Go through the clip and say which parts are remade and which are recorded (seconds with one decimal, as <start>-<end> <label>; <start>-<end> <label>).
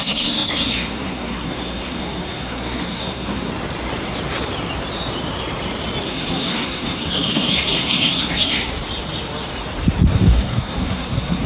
0.0-3.5 remade; 3.5-6.0 recorded; 6.0-8.7 remade; 8.7-10.1 recorded; 10.1-11.5 remade